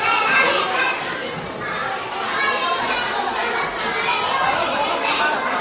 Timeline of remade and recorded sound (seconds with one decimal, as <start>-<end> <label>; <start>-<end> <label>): 0.0-5.6 recorded